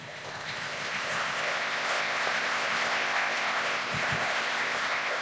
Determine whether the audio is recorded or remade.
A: remade